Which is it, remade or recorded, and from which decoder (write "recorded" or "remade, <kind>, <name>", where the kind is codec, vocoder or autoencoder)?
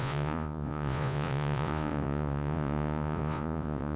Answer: remade, vocoder, Vocos